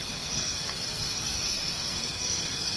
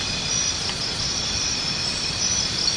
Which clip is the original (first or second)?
second